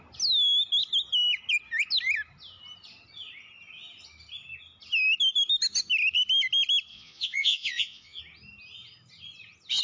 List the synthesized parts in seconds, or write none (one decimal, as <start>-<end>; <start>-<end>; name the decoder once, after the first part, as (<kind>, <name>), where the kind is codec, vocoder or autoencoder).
6.9-8.2 (vocoder, Vocos)